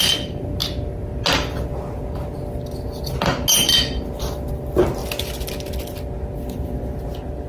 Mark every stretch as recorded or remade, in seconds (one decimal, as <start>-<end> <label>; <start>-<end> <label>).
0.0-7.5 recorded